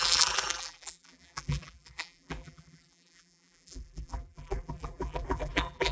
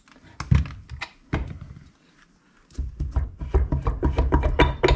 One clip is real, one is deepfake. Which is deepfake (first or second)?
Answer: first